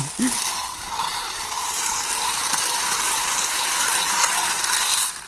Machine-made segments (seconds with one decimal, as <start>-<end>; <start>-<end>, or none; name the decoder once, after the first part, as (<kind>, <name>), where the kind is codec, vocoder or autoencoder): 1.1-4.3 (vocoder, BigVGAN v2)

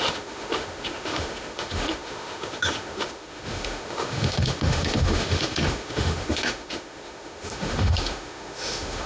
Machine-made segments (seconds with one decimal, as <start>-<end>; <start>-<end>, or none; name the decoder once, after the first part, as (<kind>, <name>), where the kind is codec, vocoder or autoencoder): 0.0-9.1 (autoencoder, DAC-VAE)

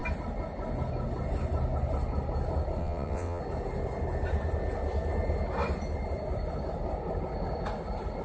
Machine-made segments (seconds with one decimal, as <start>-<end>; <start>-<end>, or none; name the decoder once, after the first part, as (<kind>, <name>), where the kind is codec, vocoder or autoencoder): 2.8-3.4 (vocoder, WaveNeXt)